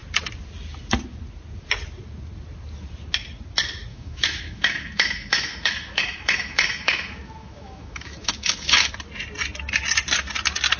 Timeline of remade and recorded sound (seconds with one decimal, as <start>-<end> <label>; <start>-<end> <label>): 0.0-3.9 recorded; 3.9-8.9 remade; 8.9-10.8 recorded